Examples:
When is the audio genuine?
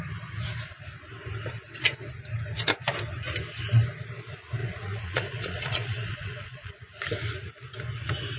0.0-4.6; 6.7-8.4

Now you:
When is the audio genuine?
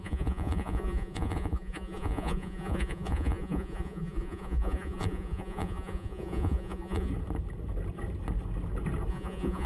7.1-9.1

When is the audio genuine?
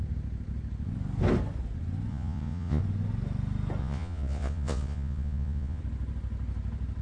0.0-2.1; 2.8-3.8; 5.8-7.0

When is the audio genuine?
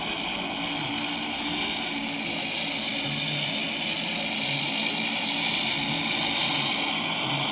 0.0-7.5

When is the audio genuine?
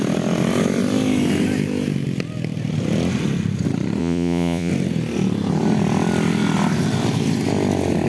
0.0-4.0; 4.7-8.1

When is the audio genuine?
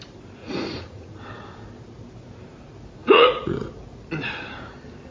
0.0-0.4; 1.2-3.0; 3.7-5.1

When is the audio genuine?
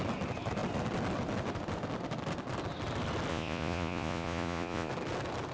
0.0-3.3; 4.9-5.5